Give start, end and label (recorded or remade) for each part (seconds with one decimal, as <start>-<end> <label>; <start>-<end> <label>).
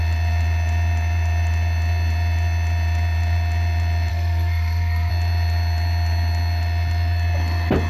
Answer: 0.0-4.1 recorded; 4.1-5.1 remade; 5.1-7.9 recorded